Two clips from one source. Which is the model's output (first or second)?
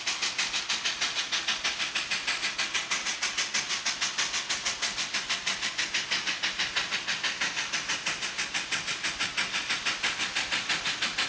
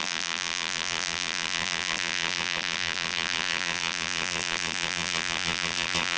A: second